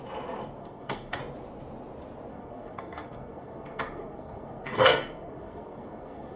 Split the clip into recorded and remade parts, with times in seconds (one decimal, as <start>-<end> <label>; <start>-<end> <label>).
0.0-0.6 recorded; 0.6-1.2 remade; 1.2-2.3 recorded; 2.3-6.4 remade